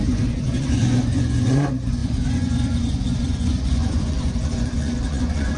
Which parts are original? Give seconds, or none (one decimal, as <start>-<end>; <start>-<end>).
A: none

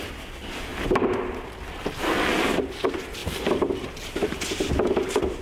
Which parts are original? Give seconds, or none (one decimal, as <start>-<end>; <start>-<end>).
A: 0.0-5.4

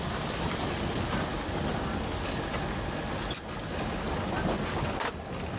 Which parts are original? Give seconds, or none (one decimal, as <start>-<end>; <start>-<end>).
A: 0.0-5.6

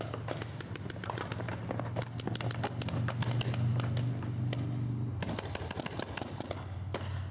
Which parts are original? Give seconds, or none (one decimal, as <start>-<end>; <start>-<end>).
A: 0.0-7.3

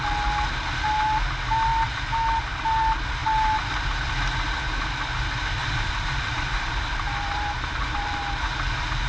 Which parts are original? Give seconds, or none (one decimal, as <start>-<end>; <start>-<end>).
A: 0.0-5.6; 8.2-9.1

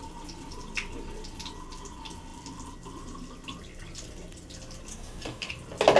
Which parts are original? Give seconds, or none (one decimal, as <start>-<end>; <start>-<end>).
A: 0.0-4.9; 5.5-6.0

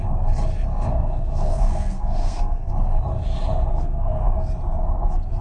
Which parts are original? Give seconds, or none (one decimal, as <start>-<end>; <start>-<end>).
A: 0.0-0.7; 2.7-3.7; 4.2-5.4